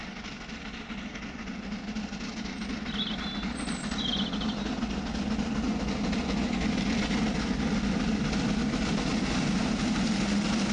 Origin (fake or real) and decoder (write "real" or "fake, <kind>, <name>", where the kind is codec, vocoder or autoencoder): real